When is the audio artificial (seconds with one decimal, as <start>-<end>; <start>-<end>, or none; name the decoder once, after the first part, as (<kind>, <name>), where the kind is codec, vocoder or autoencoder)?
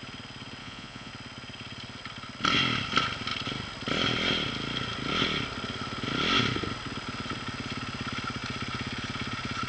0.6-1.1 (vocoder, Vocos)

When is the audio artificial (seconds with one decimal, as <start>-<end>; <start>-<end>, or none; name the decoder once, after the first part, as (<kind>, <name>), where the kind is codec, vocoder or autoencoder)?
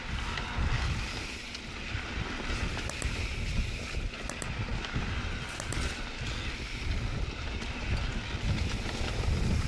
none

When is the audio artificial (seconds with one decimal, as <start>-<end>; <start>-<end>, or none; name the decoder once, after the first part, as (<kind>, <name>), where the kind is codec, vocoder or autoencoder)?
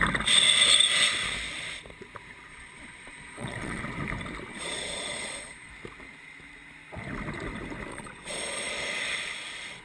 2.5-3.8 (vocoder, Vocos); 4.5-5.7; 7.9-8.7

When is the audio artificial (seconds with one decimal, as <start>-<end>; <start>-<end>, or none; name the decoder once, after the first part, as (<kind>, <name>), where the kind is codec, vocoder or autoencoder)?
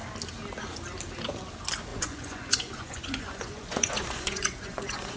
1.9-5.2 (vocoder, Vocos)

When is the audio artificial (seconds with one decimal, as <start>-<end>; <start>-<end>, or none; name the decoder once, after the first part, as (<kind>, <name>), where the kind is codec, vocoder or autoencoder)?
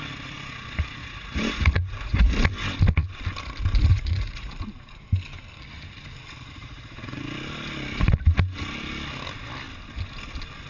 1.0-2.3 (vocoder, Vocos); 3.9-4.5; 6.6-7.2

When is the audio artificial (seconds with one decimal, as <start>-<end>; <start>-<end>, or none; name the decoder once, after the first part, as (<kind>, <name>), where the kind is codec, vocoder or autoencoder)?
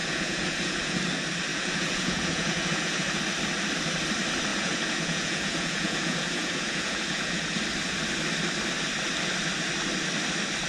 0.0-1.0 (vocoder, Vocos); 1.5-3.2; 4.5-7.6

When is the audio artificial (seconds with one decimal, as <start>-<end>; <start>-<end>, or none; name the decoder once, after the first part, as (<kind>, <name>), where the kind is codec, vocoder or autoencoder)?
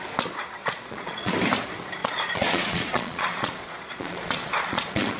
0.6-1.3 (vocoder, Vocos); 2.0-5.2